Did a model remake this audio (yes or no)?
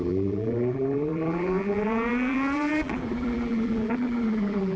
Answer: yes